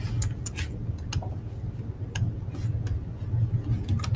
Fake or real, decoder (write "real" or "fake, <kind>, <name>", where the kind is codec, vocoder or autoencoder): real